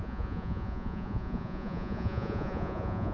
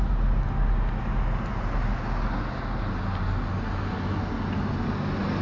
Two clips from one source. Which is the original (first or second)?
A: second